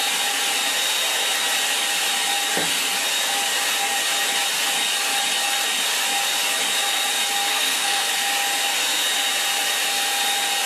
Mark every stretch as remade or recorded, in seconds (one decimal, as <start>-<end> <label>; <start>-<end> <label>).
0.0-7.5 recorded; 7.5-8.1 remade; 8.1-10.7 recorded